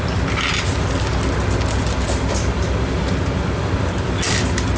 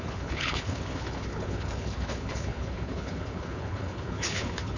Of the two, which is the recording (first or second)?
first